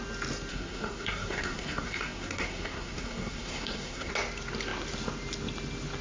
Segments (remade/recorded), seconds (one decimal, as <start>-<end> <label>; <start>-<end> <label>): 0.0-0.5 recorded; 0.5-4.1 remade; 4.1-6.0 recorded